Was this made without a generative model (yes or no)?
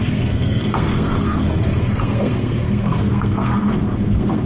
no